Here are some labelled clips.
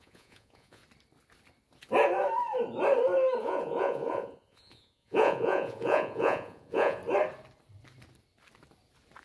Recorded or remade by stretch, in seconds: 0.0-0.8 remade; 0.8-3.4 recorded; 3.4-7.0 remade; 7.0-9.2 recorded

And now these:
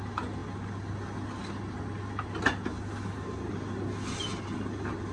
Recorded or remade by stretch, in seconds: 0.0-5.1 recorded

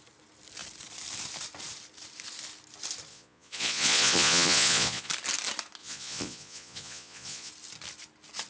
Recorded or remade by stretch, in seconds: 0.0-3.1 recorded; 3.1-5.1 remade; 5.1-5.8 recorded; 5.8-7.5 remade; 7.5-8.5 recorded

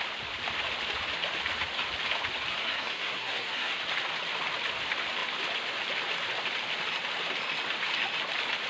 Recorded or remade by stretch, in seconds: 0.0-2.5 recorded; 2.5-3.8 remade; 3.8-8.7 recorded

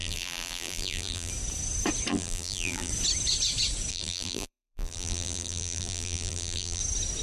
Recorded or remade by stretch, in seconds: 0.0-1.3 remade; 1.3-2.1 recorded; 2.1-2.9 remade; 2.9-3.9 recorded; 3.9-6.8 remade; 6.8-7.2 recorded

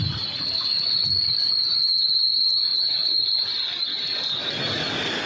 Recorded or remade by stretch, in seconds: 0.0-0.7 recorded; 0.7-1.5 remade; 1.5-5.3 recorded

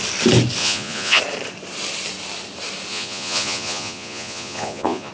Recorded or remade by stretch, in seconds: 0.0-0.6 recorded; 0.6-1.2 remade; 1.2-2.9 recorded; 2.9-5.1 remade

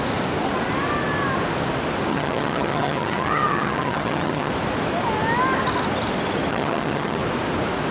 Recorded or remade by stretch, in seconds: 0.0-2.1 recorded; 2.1-4.5 remade; 4.5-6.5 recorded; 6.5-7.2 remade; 7.2-7.9 recorded